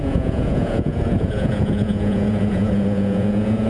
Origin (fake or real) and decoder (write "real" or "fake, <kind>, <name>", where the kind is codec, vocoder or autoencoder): fake, vocoder, Vocos